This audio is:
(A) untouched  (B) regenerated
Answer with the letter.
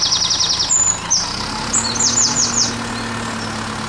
A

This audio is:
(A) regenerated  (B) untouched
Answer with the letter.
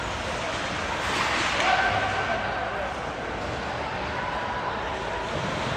B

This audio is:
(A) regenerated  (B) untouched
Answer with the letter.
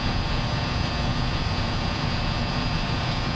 A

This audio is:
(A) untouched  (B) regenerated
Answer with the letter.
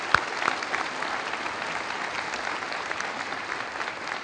A